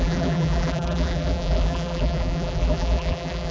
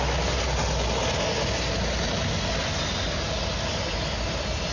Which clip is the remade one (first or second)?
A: first